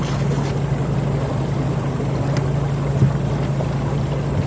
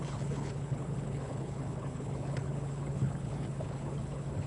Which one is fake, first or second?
second